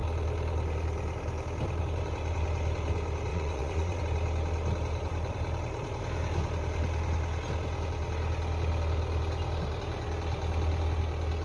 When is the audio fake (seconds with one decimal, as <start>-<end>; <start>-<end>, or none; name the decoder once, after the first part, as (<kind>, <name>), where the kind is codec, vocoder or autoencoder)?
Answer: 3.3-4.0 (vocoder, Vocos)